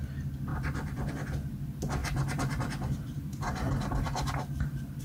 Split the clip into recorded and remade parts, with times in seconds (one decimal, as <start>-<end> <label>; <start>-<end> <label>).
0.0-0.5 recorded; 0.5-1.1 remade; 1.1-2.0 recorded; 2.0-5.0 remade